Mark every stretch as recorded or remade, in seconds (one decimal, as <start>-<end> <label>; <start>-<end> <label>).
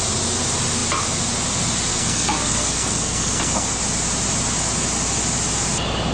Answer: 0.0-1.9 recorded; 1.9-3.8 remade; 3.8-6.1 recorded